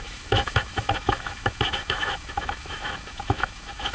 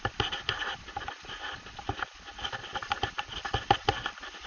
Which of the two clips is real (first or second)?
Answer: second